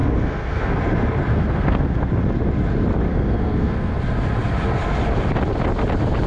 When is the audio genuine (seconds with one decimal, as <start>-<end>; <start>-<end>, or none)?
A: 0.8-1.3; 2.1-3.1; 3.9-6.3